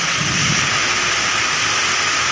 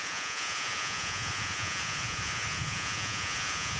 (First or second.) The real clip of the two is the first